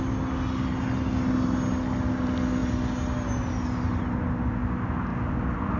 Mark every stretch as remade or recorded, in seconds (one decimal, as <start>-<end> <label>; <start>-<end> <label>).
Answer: 0.0-5.8 recorded